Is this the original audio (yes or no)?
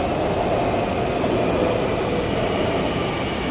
yes